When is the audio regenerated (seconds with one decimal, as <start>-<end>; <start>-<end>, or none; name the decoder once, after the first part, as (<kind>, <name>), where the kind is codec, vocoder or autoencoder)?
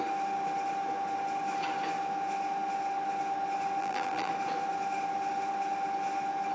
3.8-4.3 (vocoder, BigVGAN v2)